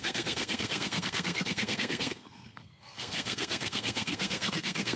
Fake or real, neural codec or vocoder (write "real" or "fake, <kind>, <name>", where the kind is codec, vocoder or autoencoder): fake, codec, SNAC